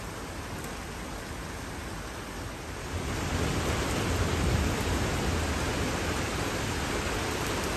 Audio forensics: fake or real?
real